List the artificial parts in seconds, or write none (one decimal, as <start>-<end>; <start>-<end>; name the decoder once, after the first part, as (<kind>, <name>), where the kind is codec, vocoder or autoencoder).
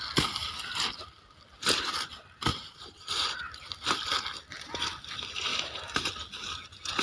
2.5-3.4 (vocoder, BigVGAN v2); 5.5-6.1